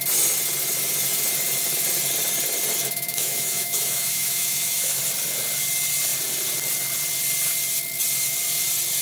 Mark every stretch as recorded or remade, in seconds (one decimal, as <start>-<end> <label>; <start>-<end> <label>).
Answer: 0.0-2.8 recorded; 2.8-5.0 remade; 5.0-9.0 recorded